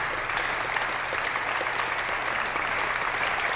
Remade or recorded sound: recorded